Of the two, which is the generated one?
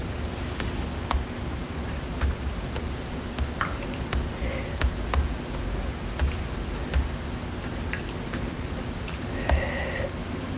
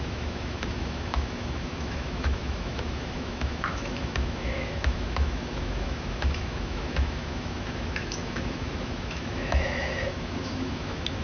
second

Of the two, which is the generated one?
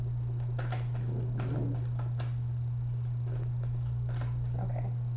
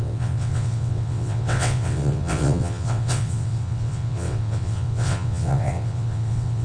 second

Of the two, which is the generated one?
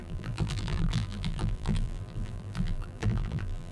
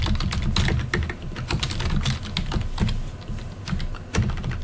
first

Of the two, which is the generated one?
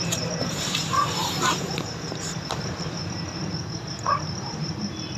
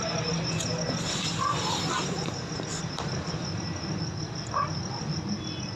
first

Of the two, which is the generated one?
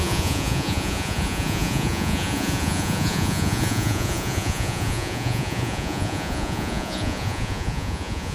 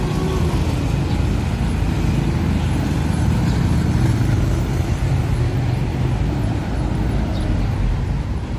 first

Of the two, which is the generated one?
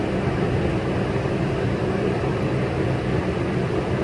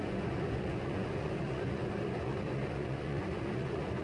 second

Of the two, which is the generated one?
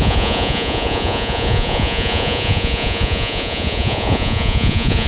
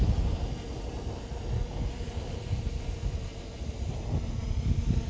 first